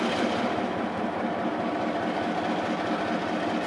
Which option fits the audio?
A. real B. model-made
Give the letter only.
A